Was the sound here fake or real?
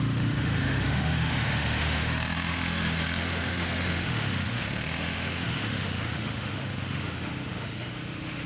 fake